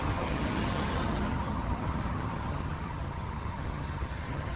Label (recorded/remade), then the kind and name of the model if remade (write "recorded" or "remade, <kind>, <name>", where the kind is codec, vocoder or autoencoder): remade, vocoder, HiFi-GAN